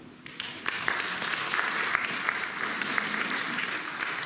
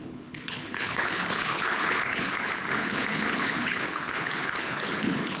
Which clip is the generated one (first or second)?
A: second